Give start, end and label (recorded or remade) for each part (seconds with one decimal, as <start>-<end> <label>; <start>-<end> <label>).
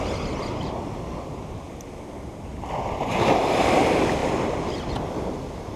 0.0-5.8 recorded